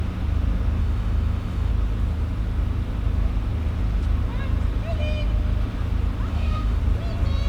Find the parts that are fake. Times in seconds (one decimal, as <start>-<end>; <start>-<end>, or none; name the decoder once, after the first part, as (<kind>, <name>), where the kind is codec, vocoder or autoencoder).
0.8-1.7 (autoencoder, DAC-VAE); 6.3-6.8